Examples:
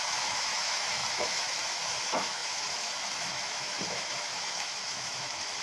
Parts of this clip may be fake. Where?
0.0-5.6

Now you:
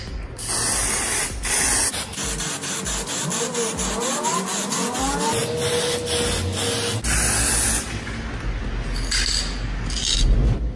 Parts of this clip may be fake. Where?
none

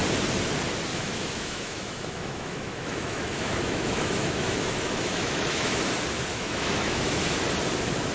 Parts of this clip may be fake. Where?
0.9-5.8; 6.3-7.2

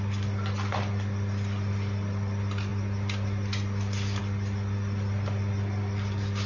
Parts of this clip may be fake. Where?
none

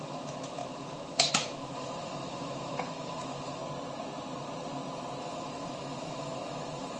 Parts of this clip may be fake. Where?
0.0-3.6; 5.2-7.0

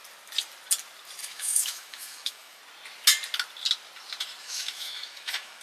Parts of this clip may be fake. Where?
1.2-2.6; 4.4-5.6